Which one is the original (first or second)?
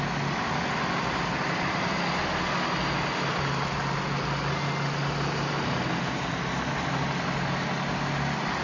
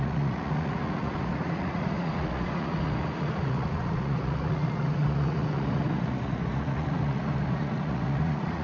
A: first